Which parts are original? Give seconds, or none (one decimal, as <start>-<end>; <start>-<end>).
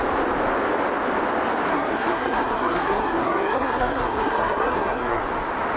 0.0-1.7; 5.2-5.8